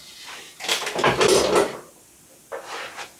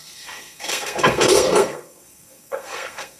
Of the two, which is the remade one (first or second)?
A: second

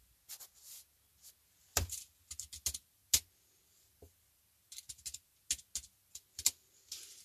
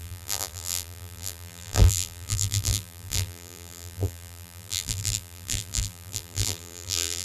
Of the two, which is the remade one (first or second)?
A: second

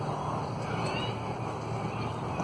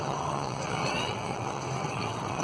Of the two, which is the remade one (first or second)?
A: second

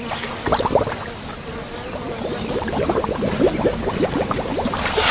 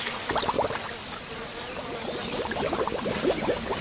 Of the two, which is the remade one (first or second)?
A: second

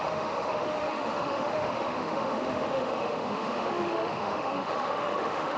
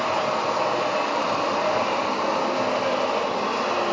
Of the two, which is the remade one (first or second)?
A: first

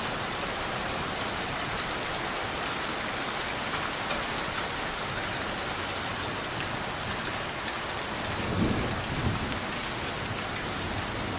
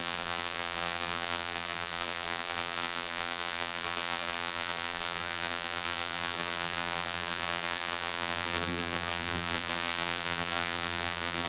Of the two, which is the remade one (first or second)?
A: second